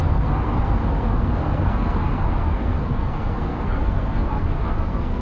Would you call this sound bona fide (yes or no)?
no